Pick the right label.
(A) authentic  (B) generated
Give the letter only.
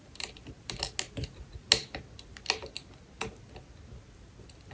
A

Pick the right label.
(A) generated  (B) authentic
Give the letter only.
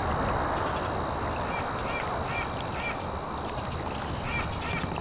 B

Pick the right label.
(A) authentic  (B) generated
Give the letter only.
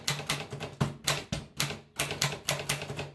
A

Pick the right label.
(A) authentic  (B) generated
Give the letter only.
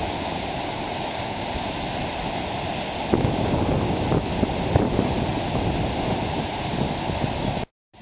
A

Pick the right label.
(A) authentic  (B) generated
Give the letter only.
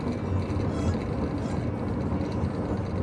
A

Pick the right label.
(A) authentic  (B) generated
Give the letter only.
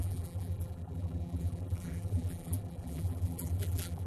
B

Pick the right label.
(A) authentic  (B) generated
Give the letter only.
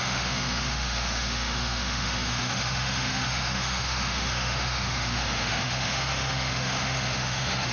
B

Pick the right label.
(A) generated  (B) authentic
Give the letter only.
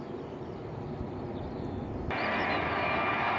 B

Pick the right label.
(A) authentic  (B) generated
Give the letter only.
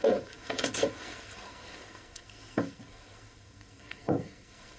B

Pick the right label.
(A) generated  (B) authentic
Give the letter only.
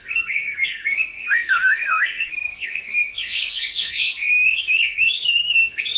A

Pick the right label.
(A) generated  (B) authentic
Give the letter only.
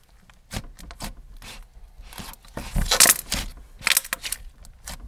B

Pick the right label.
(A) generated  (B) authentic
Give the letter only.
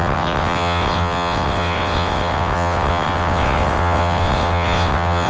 A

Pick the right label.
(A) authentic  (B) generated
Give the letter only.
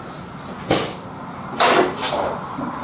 A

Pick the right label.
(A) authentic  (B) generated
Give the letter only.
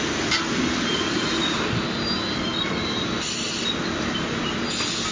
A